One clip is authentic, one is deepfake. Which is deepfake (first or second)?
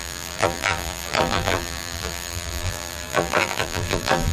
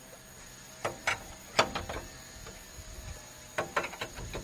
first